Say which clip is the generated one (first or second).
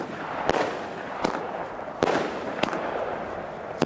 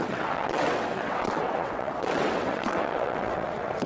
second